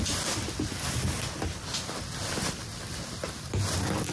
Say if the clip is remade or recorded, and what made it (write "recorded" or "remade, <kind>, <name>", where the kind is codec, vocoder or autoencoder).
recorded